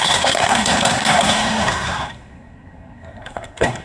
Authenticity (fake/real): fake